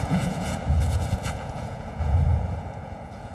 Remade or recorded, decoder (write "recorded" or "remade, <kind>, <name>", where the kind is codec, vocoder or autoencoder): remade, vocoder, Vocos